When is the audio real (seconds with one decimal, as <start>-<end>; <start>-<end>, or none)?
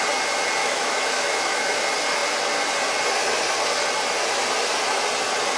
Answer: 0.0-0.6; 1.8-5.6